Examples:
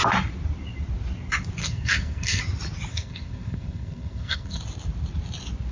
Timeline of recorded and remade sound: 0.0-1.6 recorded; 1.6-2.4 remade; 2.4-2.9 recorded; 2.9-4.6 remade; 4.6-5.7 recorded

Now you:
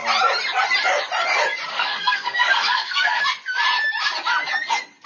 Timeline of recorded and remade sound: 0.0-1.7 recorded; 1.7-3.2 remade; 3.2-5.1 recorded

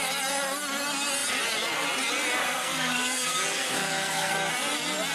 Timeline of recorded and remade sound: 0.0-2.4 recorded; 2.4-4.5 remade; 4.5-5.1 recorded

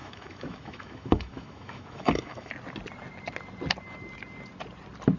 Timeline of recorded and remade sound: 0.0-2.5 remade; 2.5-5.2 recorded

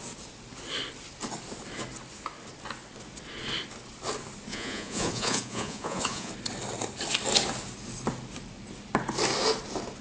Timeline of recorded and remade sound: 0.0-4.5 recorded; 4.5-6.3 remade; 6.3-10.0 recorded

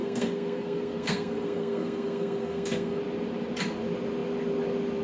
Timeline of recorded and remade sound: 0.0-3.0 remade; 3.0-5.0 recorded

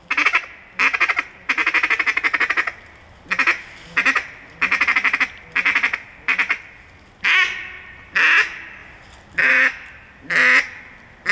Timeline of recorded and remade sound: 0.0-11.3 recorded